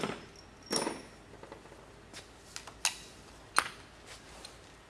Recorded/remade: recorded